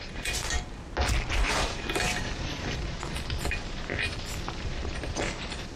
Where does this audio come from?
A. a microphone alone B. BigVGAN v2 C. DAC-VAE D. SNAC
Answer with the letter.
A